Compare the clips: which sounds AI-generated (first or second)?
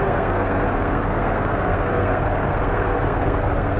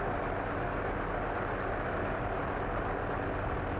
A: first